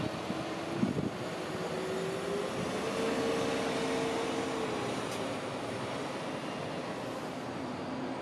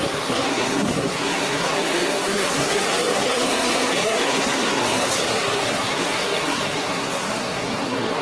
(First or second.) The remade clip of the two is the second